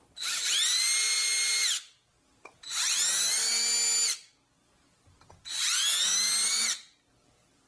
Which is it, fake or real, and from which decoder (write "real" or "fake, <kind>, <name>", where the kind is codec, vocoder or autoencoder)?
real